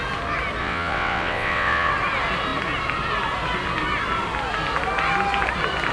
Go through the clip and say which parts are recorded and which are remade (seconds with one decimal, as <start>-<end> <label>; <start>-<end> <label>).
0.0-0.6 recorded; 0.6-1.9 remade; 1.9-5.9 recorded

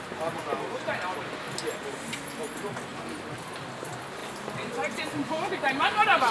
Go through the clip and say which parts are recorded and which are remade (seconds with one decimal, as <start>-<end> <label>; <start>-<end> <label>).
0.0-4.2 recorded; 4.2-6.3 remade

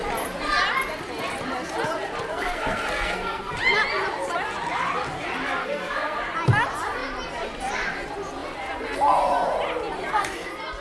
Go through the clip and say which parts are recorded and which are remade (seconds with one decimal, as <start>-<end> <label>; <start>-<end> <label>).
0.0-2.3 recorded; 2.3-3.5 remade; 3.5-5.6 recorded; 5.6-6.2 remade; 6.2-10.8 recorded

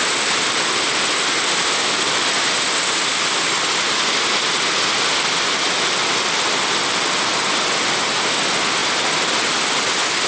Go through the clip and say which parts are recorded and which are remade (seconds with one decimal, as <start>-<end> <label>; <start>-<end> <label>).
0.0-10.3 recorded

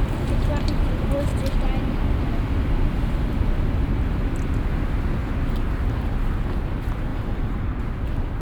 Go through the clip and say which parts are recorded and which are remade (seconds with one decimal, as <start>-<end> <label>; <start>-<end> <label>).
0.0-7.1 recorded; 7.1-7.7 remade; 7.7-8.4 recorded